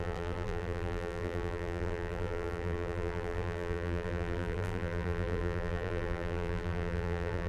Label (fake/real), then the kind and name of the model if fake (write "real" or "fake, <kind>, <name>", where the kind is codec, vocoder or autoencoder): fake, vocoder, BigVGAN v2